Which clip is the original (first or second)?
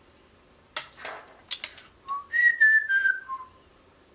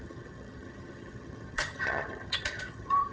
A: first